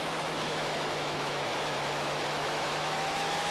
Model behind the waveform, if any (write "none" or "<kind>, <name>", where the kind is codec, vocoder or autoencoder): autoencoder, DAC-VAE